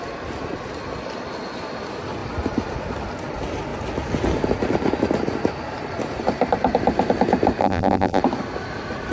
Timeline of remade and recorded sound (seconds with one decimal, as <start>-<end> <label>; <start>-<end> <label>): 0.0-7.6 recorded; 7.6-8.2 remade; 8.2-9.1 recorded